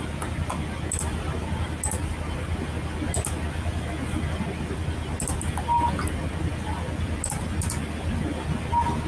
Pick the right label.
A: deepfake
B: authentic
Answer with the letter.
B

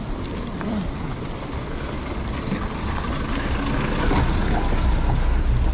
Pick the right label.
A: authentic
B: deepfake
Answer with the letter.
A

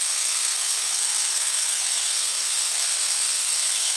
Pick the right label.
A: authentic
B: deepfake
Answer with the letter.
B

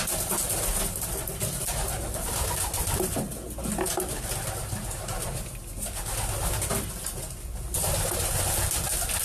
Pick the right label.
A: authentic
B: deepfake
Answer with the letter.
A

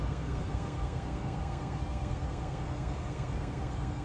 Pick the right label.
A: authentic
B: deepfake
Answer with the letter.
B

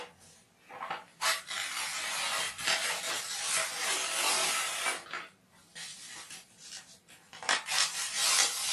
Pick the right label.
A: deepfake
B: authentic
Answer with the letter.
B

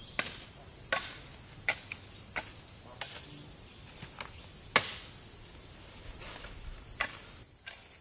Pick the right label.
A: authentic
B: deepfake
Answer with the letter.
A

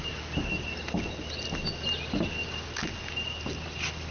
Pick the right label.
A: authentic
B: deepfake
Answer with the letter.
A